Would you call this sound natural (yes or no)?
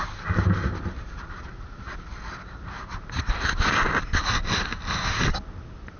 yes